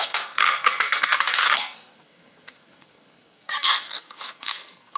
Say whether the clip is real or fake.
fake